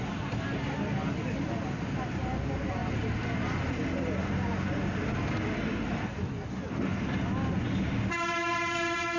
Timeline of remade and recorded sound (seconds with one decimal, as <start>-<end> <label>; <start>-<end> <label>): 0.0-2.8 recorded; 2.8-4.3 remade; 4.3-9.2 recorded